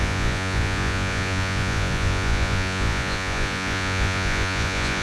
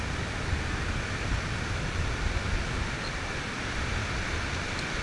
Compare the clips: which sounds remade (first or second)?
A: first